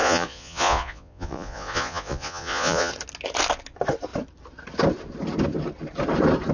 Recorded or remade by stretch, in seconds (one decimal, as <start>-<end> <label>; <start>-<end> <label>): 0.0-2.9 remade; 2.9-6.5 recorded